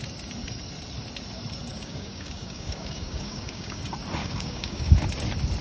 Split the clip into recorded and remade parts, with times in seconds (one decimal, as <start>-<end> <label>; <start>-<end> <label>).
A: 0.0-1.7 recorded; 1.7-3.8 remade; 3.8-4.2 recorded; 4.2-4.9 remade; 4.9-5.6 recorded